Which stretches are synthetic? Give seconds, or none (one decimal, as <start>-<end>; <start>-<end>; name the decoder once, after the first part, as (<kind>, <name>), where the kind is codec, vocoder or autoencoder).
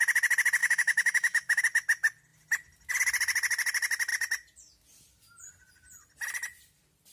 0.6-1.6 (autoencoder, DAC-VAE)